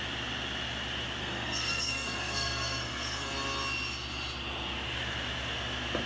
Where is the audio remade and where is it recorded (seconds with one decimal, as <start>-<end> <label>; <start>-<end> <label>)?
0.0-1.2 recorded; 1.2-3.3 remade; 3.3-6.1 recorded